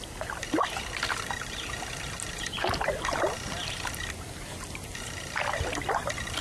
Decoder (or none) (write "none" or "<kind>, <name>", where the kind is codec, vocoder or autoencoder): none